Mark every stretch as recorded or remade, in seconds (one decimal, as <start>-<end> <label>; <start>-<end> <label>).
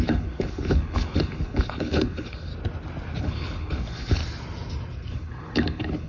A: 0.0-2.5 remade; 2.5-3.2 recorded; 3.2-4.2 remade; 4.2-5.1 recorded; 5.1-6.1 remade